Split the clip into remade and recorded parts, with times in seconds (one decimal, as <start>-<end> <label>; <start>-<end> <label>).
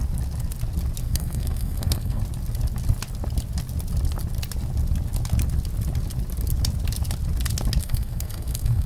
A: 0.0-1.0 recorded; 1.0-2.2 remade; 2.2-7.8 recorded; 7.8-8.9 remade